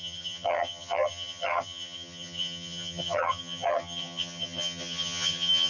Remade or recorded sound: remade